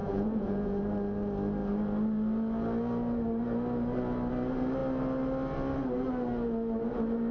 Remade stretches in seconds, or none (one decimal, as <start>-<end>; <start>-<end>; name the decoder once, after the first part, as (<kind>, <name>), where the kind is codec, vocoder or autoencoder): 0.0-0.8 (vocoder, Vocos)